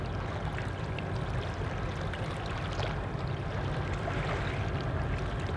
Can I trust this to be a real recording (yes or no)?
yes